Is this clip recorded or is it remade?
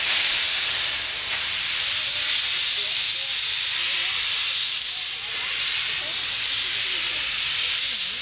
recorded